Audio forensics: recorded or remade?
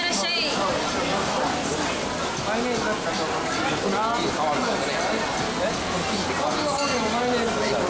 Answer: recorded